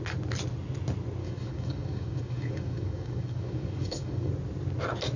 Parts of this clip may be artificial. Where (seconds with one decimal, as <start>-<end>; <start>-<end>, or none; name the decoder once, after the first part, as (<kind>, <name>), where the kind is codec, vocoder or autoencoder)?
1.2-4.3 (codec, DAC)